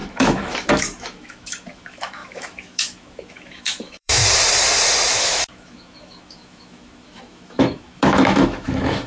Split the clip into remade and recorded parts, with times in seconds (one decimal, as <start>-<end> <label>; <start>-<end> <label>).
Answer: 0.0-4.2 remade; 4.2-5.2 recorded; 5.2-9.1 remade